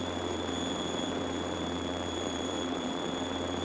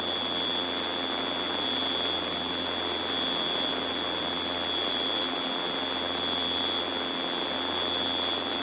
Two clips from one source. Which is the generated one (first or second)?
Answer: first